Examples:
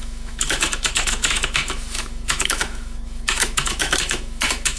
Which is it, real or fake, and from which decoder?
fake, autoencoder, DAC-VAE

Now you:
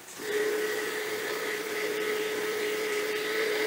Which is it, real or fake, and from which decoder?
fake, vocoder, BigVGAN v2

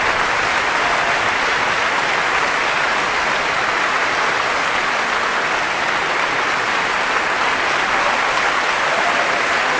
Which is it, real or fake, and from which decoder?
real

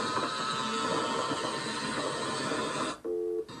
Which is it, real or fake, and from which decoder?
real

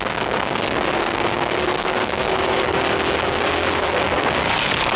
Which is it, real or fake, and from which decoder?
fake, codec, DAC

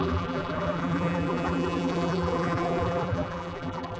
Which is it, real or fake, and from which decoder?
fake, vocoder, BigVGAN v2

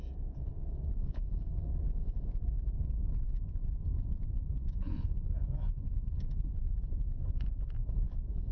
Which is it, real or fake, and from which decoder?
fake, vocoder, Vocos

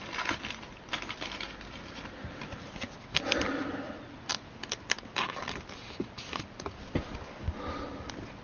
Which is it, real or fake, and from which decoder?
real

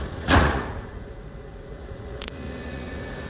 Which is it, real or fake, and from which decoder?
fake, vocoder, Vocos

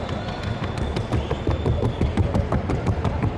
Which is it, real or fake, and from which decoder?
real